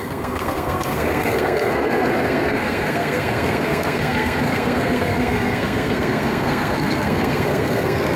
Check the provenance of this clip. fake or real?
fake